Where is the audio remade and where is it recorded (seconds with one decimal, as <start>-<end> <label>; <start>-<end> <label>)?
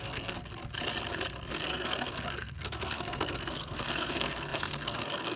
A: 0.0-0.4 remade; 0.4-1.5 recorded; 1.5-5.4 remade